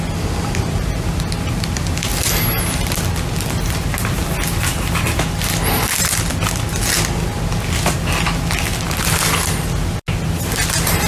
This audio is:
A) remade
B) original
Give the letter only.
B